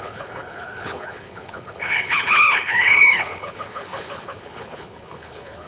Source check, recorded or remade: remade